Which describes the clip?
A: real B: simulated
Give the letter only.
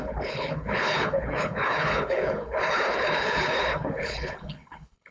B